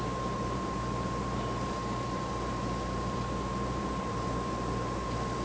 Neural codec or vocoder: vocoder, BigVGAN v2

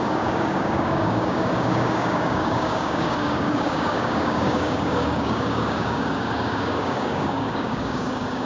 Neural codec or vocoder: codec, DAC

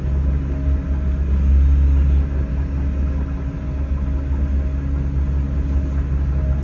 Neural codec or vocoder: none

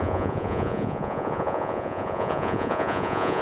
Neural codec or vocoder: vocoder, Vocos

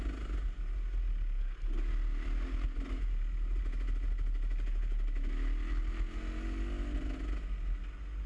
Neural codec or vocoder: none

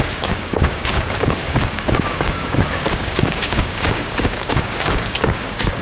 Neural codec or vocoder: codec, DAC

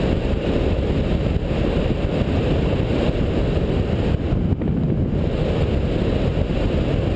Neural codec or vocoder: none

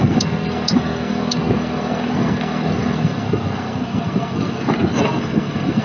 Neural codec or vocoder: codec, SNAC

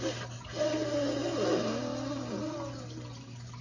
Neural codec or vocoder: none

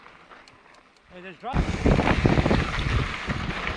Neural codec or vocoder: none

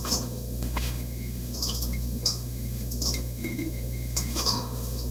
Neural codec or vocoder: autoencoder, DAC-VAE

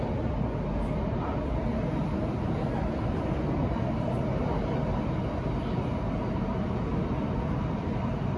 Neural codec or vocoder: none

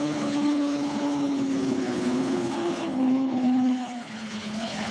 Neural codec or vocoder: codec, HILCodec